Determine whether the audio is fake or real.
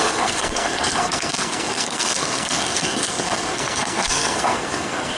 fake